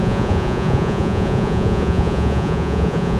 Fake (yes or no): yes